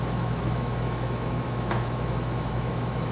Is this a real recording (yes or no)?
no